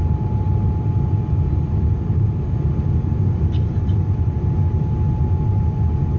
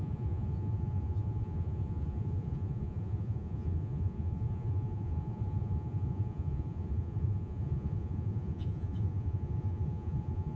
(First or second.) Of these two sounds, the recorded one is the first